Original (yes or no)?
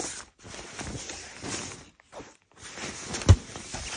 yes